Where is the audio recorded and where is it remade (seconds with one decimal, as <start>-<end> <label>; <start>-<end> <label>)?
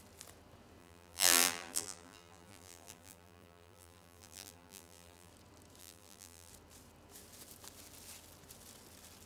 0.0-0.8 recorded; 0.8-5.3 remade; 5.3-5.8 recorded; 5.8-6.5 remade; 6.5-9.3 recorded